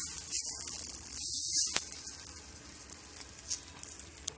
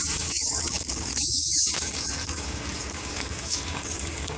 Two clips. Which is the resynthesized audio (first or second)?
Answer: second